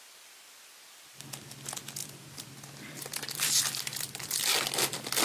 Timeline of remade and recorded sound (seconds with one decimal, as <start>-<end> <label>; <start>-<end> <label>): 0.0-2.0 recorded; 2.0-4.3 remade; 4.3-5.2 recorded